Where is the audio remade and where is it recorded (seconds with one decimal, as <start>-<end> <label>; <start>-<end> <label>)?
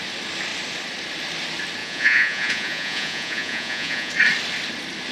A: 0.0-1.8 recorded; 1.8-4.1 remade; 4.1-5.1 recorded